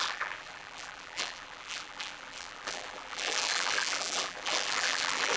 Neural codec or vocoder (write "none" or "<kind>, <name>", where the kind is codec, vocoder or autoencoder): vocoder, BigVGAN v2